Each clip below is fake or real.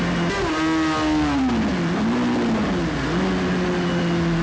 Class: real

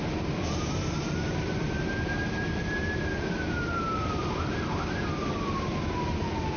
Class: fake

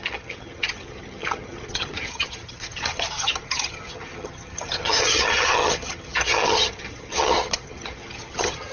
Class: fake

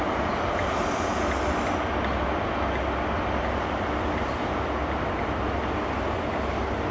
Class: real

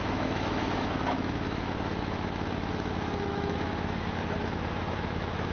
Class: fake